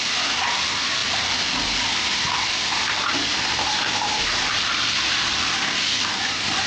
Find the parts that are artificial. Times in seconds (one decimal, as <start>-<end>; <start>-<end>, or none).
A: none